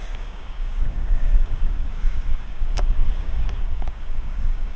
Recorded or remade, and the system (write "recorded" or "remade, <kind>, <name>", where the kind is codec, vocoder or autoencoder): remade, codec, DAC